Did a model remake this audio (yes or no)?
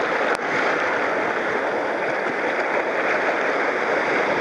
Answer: no